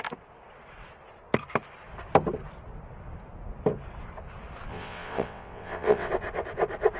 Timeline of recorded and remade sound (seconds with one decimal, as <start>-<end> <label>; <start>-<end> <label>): 0.0-4.7 recorded; 4.7-6.1 remade; 6.1-7.0 recorded